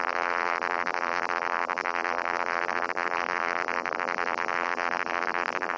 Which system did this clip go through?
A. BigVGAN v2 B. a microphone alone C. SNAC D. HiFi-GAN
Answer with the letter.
A